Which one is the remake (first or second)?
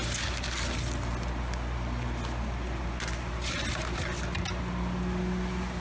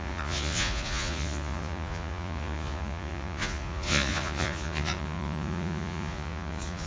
second